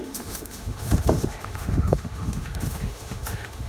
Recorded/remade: remade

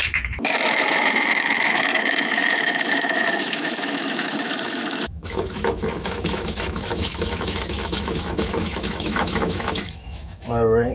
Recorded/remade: remade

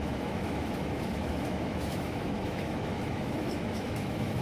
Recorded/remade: remade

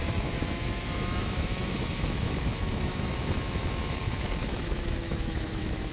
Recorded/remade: remade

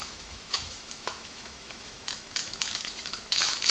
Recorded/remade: remade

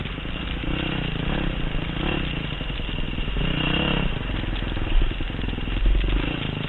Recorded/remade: recorded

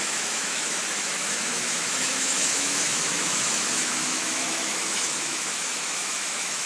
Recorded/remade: remade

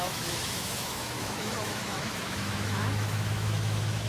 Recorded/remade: remade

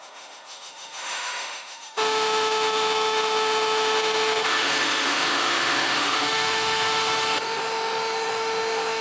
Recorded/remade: remade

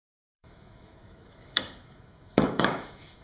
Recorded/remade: remade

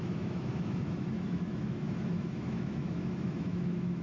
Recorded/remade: remade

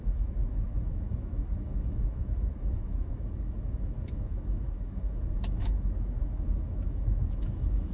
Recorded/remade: remade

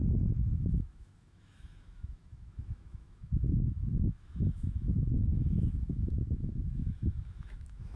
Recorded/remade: remade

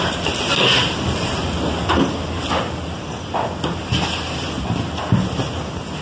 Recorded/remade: recorded